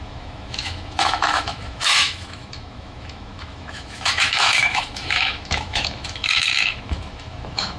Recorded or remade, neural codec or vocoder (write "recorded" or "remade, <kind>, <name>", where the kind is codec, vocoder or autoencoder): remade, autoencoder, DAC-VAE